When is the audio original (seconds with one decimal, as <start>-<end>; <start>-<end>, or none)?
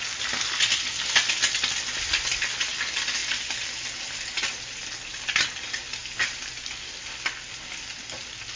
0.0-3.2; 4.0-6.0; 6.7-8.6